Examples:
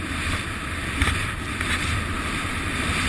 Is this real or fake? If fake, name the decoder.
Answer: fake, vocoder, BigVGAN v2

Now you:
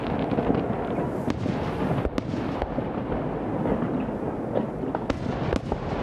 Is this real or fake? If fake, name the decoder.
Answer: real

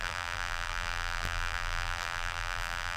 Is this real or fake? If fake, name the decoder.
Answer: fake, vocoder, BigVGAN v2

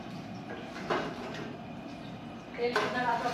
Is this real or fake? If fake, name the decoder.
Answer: fake, vocoder, BigVGAN v2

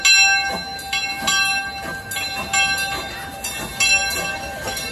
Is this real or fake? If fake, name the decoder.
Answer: real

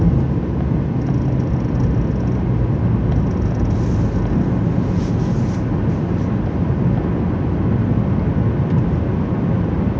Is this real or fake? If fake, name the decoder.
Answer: real